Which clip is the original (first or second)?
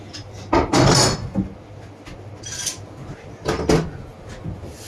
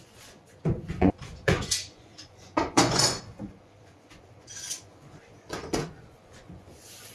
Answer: first